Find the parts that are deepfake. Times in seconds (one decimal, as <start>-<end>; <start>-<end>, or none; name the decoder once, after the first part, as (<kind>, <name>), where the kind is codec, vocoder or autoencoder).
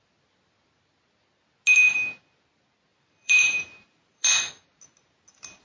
2.9-4.3 (vocoder, BigVGAN v2)